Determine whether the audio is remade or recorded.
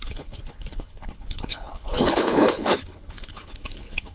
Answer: remade